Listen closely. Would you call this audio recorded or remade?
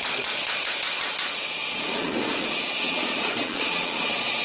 remade